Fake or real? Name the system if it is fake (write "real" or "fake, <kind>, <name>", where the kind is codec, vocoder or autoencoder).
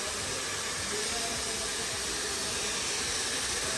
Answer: real